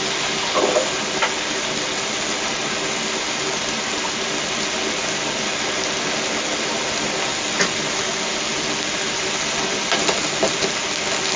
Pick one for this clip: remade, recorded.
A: recorded